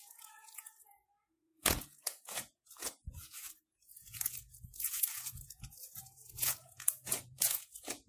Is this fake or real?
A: fake